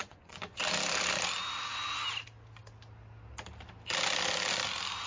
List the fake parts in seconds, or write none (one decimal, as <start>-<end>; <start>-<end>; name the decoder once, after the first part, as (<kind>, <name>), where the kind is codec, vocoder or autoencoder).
0.0-0.6 (vocoder, Vocos)